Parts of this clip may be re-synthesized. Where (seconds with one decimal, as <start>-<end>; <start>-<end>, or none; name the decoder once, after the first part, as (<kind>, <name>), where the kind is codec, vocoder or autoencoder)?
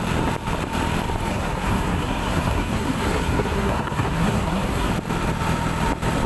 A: 1.3-4.9 (codec, SNAC)